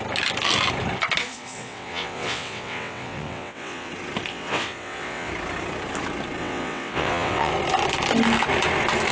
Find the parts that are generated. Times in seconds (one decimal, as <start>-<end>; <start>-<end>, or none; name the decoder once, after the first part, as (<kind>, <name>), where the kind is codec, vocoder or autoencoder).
1.2-3.9 (vocoder, WaveNeXt); 4.3-5.3; 6.4-7.5